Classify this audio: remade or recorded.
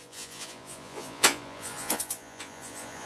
remade